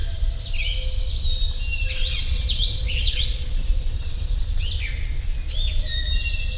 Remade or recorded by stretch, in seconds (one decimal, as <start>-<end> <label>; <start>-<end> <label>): 0.0-2.0 recorded; 2.0-4.4 remade; 4.4-6.6 recorded